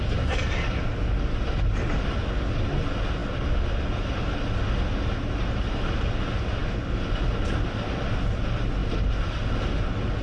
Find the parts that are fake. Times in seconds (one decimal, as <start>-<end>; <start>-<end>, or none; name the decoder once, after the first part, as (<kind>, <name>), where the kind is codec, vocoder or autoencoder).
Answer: none